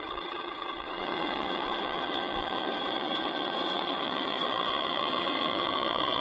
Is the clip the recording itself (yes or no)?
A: no